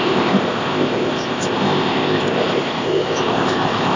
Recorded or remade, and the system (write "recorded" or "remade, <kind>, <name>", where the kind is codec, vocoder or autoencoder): remade, codec, ZipCodec